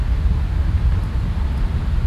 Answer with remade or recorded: recorded